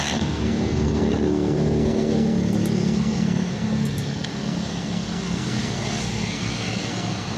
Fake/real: fake